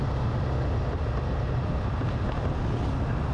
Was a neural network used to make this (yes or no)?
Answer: no